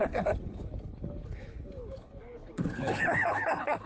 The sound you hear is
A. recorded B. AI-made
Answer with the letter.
B